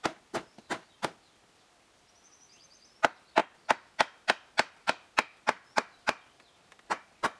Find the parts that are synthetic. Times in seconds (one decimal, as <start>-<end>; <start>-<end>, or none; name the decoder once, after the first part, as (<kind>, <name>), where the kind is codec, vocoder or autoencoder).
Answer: none